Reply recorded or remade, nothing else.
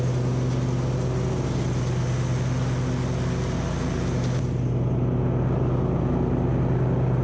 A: recorded